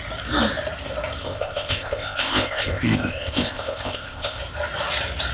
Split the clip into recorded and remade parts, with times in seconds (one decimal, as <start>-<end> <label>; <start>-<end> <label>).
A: 0.0-1.2 recorded; 1.2-4.4 remade; 4.4-5.3 recorded